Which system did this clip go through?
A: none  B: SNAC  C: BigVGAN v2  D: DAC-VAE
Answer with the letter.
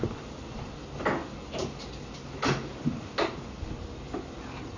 A